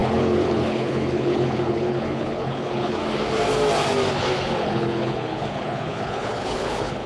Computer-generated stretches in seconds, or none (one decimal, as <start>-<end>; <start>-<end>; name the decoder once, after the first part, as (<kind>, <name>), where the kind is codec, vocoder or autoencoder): 0.0-3.0 (codec, HILCodec); 4.1-7.1